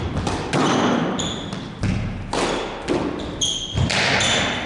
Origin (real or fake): real